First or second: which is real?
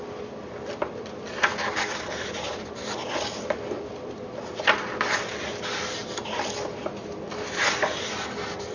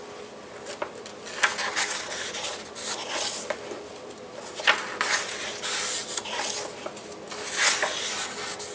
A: second